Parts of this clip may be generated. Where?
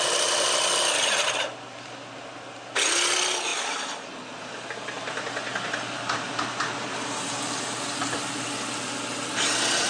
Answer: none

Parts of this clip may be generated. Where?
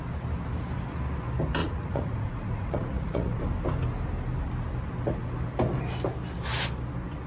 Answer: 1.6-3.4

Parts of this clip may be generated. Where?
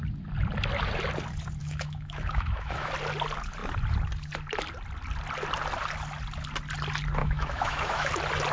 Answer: 1.6-2.9; 7.2-8.1